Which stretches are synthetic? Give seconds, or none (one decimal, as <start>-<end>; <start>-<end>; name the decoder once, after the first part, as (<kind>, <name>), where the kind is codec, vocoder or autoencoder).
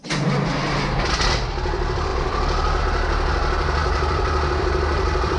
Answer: 0.0-5.4 (vocoder, BigVGAN v2)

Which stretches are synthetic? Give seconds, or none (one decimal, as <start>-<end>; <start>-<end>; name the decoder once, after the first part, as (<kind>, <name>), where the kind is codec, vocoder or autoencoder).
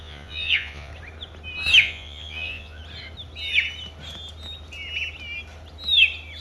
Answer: 0.0-0.9 (vocoder, Vocos); 1.8-2.8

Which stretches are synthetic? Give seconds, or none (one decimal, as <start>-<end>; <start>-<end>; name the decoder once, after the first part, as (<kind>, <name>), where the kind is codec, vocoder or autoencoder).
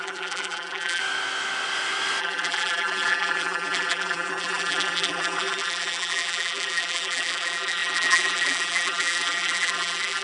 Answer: 0.0-1.0 (vocoder, BigVGAN v2); 2.2-10.2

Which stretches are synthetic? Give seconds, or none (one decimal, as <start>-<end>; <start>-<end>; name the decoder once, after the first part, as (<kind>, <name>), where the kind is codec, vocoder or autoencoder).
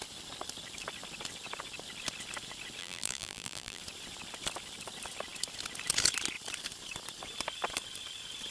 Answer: 2.8-3.8 (vocoder, BigVGAN v2)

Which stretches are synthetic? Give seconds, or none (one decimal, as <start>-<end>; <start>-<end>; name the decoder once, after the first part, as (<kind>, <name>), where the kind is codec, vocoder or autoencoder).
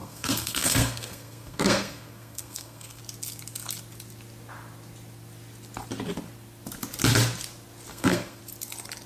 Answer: 0.0-3.0 (codec, SNAC); 7.9-8.4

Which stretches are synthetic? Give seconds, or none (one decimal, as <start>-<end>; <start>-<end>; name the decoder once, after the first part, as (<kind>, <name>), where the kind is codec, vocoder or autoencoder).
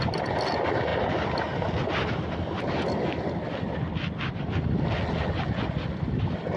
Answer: none